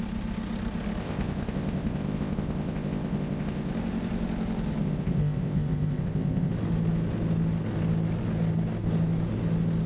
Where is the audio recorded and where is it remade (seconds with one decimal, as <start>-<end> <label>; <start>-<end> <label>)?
0.0-1.0 recorded; 1.0-3.7 remade; 3.7-4.8 recorded; 4.8-6.5 remade; 6.5-9.9 recorded